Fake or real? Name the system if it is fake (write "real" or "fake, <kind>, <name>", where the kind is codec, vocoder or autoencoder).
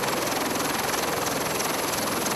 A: real